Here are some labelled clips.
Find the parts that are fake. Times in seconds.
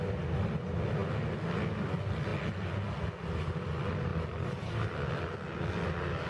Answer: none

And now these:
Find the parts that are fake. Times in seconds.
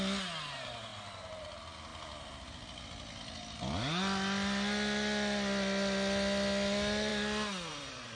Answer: none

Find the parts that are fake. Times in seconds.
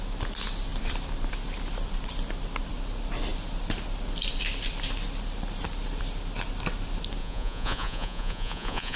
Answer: 7.2-9.0 (vocoder, Vocos)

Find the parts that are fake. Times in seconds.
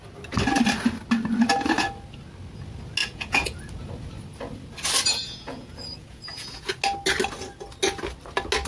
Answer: 3.0-3.6 (vocoder, Vocos); 5.1-6.8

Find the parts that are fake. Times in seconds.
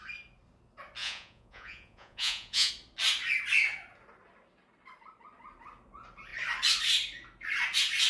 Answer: 1.0-2.7 (vocoder, Vocos)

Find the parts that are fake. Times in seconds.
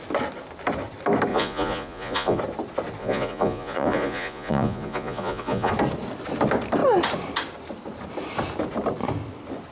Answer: 1.3-2.4 (vocoder, Vocos); 3.0-5.7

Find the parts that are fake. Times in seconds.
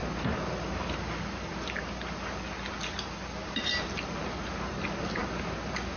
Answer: none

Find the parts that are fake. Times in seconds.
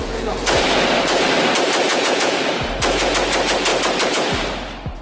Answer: 1.9-2.4 (vocoder, Vocos)